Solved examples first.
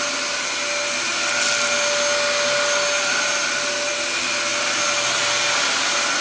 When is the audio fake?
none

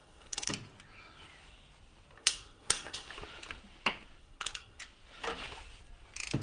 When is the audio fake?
0.0-0.5; 2.2-3.1; 4.2-4.8

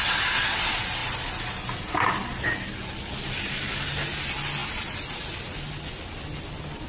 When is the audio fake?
none

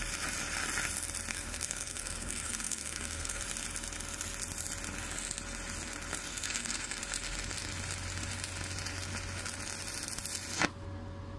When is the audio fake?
1.3-3.4; 6.3-7.0

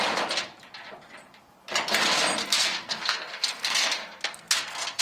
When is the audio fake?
2.4-5.0

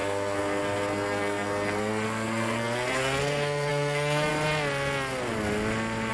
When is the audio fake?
0.0-4.3

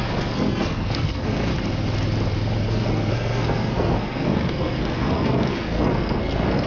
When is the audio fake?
0.0-1.5; 2.7-6.7

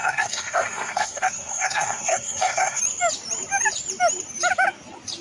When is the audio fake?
0.0-2.8